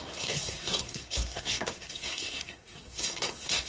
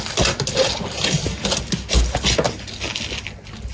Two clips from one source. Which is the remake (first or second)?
first